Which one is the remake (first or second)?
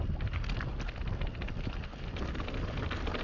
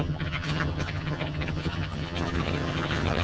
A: second